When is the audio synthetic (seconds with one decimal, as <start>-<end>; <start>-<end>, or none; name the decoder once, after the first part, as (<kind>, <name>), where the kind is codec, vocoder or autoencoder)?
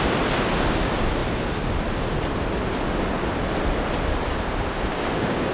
4.9-5.5 (codec, DAC)